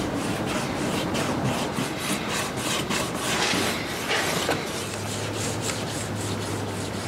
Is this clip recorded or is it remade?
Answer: recorded